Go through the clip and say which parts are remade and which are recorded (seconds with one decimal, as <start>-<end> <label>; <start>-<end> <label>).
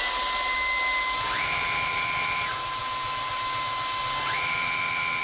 0.0-5.2 recorded